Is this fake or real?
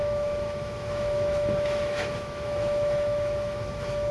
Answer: fake